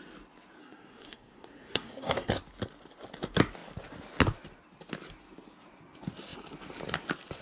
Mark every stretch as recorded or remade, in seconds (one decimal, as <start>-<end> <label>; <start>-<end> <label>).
0.0-0.6 recorded; 0.6-2.3 remade; 2.3-7.4 recorded